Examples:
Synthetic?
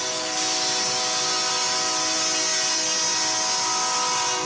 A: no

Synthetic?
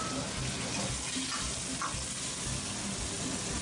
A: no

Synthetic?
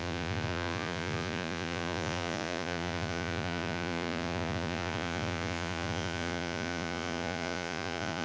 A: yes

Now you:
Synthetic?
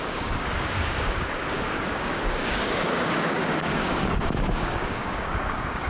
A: yes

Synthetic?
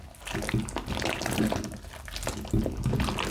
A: no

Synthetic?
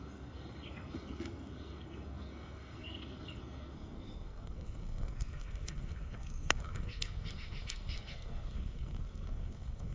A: yes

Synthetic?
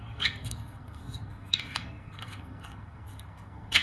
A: yes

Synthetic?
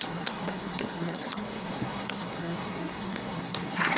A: yes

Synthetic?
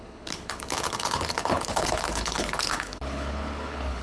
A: yes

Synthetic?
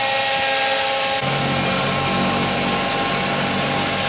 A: no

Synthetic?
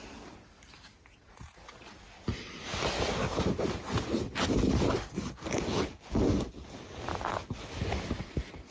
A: no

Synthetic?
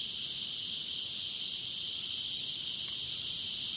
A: no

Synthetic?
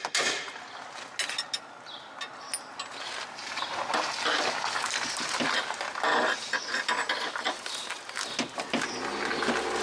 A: no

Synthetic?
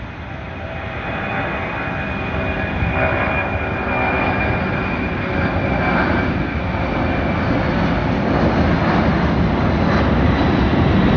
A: no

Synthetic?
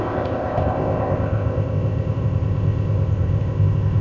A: yes